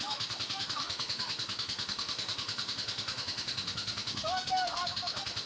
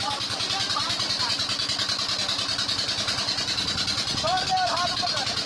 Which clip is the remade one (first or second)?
first